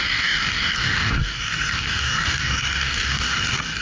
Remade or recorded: remade